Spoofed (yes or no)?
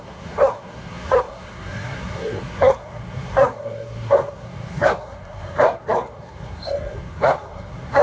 yes